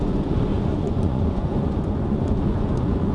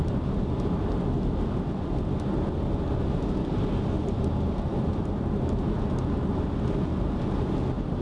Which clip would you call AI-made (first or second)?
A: first